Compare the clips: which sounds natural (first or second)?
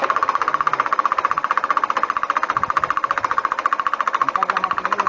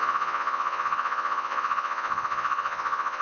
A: first